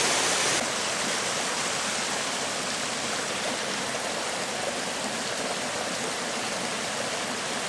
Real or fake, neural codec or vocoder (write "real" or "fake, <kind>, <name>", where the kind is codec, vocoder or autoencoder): real